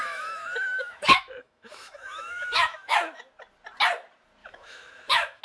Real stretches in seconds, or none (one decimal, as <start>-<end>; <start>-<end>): 3.2-4.4